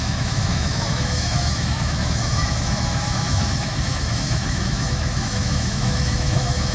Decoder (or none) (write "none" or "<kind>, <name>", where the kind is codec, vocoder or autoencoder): autoencoder, DAC-VAE